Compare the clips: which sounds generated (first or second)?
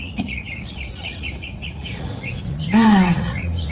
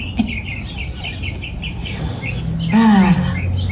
first